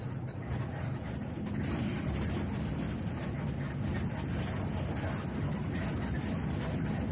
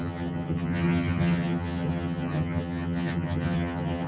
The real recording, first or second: first